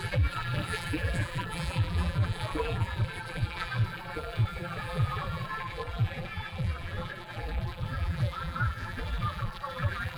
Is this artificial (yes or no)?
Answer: yes